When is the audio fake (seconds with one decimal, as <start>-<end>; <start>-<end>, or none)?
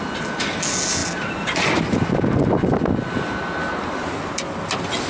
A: none